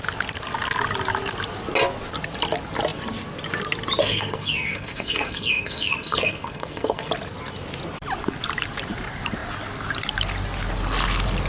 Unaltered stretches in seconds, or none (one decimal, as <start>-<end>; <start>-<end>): 0.0-4.0; 7.1-11.5